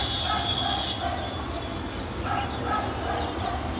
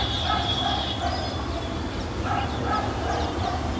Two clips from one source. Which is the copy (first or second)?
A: second